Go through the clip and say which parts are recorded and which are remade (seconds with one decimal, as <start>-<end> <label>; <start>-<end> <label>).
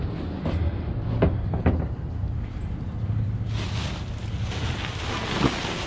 0.0-2.2 recorded; 2.2-5.1 remade; 5.1-5.9 recorded